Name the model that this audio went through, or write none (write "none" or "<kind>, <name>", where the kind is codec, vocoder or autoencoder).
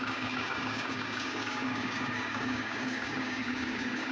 codec, DAC